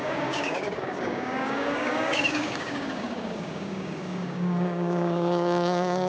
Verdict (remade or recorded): remade